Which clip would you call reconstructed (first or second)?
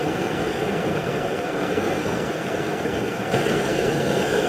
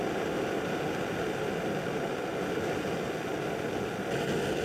first